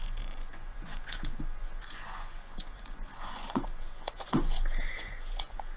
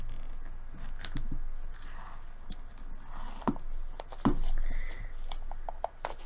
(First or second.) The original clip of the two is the second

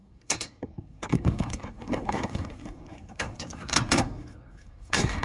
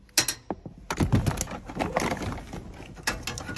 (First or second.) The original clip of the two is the second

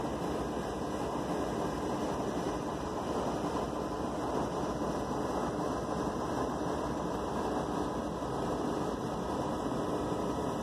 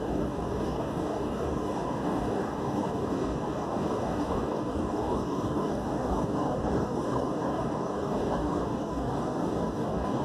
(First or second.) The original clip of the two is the first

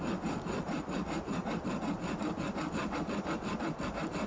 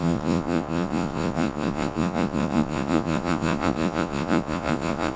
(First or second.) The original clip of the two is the first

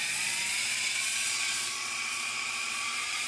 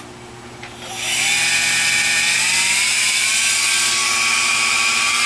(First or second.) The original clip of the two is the second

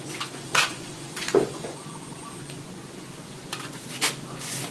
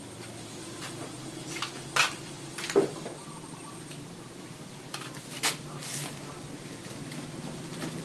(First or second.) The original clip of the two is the second